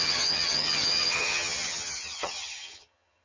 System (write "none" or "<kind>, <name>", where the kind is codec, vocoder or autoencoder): vocoder, HiFi-GAN